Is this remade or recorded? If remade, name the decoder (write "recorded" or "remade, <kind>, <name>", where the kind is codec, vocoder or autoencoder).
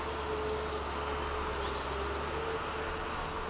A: recorded